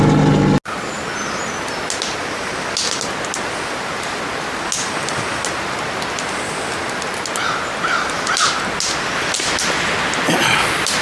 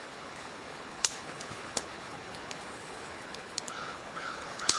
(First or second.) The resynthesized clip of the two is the second